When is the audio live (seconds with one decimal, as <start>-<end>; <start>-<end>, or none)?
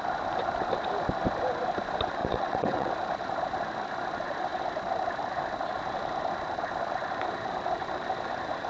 0.0-2.2; 2.9-8.7